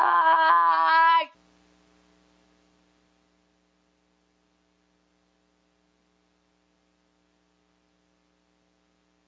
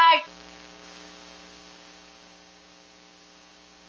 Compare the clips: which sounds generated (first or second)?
second